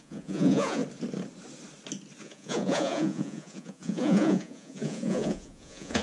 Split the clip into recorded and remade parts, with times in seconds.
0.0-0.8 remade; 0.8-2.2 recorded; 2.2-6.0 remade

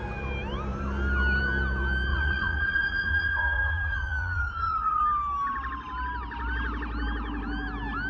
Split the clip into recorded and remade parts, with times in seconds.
0.0-2.1 recorded; 2.1-5.0 remade; 5.0-8.1 recorded

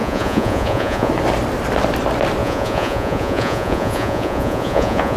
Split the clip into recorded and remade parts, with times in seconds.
0.0-1.1 remade; 1.1-2.4 recorded; 2.4-5.2 remade